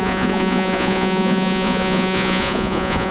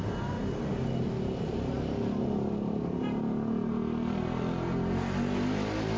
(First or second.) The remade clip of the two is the first